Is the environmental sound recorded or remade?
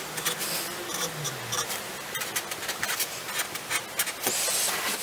recorded